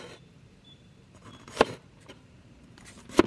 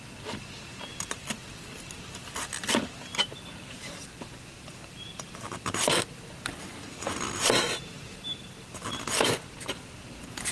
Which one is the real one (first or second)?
second